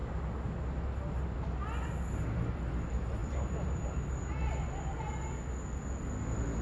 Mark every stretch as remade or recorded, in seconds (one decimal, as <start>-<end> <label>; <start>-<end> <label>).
0.0-3.2 recorded; 3.2-4.2 remade; 4.2-6.6 recorded